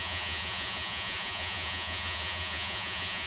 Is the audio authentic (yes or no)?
no